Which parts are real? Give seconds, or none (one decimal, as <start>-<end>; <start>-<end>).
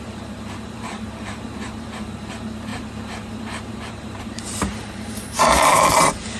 2.7-3.7